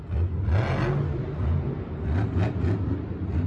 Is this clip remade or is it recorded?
recorded